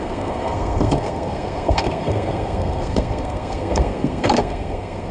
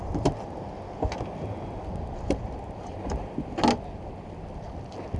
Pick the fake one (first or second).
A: first